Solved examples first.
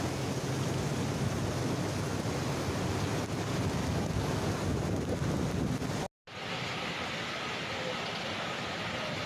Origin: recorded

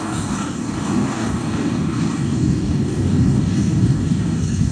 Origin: remade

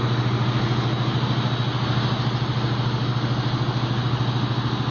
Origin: recorded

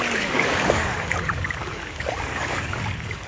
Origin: remade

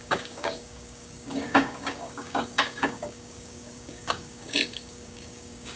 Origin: remade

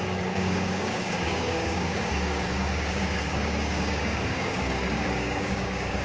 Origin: remade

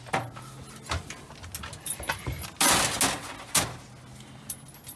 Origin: recorded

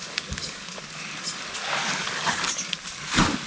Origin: remade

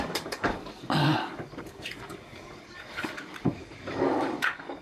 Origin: remade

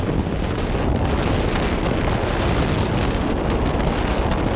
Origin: recorded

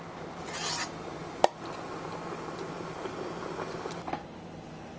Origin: recorded